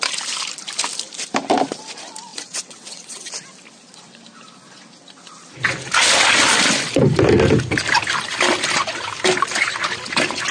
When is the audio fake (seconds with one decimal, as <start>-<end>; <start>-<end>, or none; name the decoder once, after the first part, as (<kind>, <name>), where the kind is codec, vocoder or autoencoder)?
2.3-3.3 (vocoder, WaveNeXt)